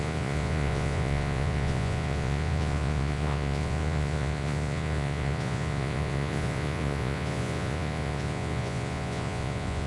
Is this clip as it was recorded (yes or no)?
no